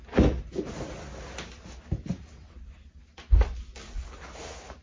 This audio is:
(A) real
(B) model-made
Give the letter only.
A